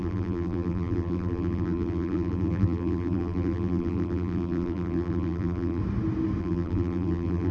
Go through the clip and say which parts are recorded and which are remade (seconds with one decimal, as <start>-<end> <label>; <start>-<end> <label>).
0.0-5.8 remade; 5.8-6.4 recorded; 6.4-7.5 remade